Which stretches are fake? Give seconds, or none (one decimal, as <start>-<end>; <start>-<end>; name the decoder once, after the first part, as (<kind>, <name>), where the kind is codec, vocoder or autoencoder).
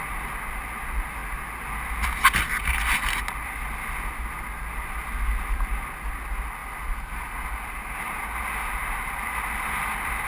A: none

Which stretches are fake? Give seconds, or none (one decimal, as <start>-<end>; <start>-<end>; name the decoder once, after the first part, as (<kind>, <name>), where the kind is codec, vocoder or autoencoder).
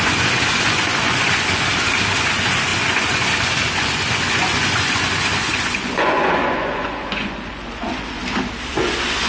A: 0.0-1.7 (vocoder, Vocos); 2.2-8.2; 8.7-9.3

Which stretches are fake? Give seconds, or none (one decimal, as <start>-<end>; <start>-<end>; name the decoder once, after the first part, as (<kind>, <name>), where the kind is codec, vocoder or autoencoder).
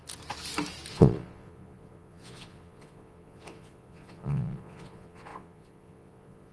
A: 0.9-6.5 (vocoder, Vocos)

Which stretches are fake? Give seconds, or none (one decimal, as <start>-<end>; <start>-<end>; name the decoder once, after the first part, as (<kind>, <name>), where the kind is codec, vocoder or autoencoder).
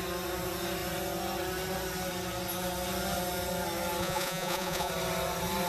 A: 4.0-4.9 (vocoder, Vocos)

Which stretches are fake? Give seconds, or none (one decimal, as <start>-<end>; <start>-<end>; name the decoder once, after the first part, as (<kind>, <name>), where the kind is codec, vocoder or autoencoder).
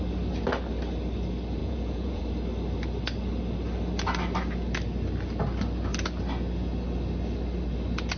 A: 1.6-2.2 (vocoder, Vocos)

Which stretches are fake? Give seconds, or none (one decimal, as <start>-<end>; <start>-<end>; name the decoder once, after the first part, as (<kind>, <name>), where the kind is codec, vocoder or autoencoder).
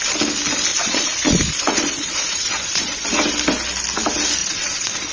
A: 0.7-3.0 (vocoder, Vocos); 4.4-5.1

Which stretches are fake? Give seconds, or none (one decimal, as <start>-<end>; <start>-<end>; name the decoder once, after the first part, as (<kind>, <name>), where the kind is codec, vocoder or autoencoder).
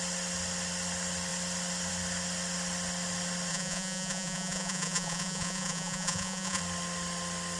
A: 3.5-6.6 (vocoder, Vocos)